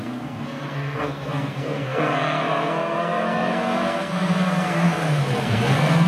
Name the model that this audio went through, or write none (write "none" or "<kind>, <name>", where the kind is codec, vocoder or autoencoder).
codec, SNAC